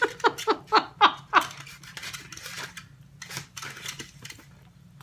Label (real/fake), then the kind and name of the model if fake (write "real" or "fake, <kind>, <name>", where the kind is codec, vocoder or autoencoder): real